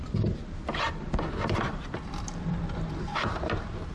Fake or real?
fake